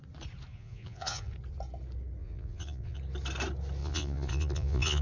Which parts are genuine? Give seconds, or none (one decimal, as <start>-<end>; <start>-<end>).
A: 0.0-0.5; 1.3-2.2; 3.0-3.8